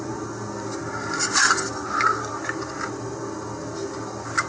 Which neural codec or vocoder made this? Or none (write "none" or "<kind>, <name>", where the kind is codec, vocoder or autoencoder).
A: none